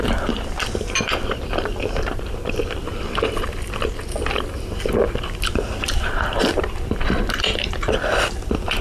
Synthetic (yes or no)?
yes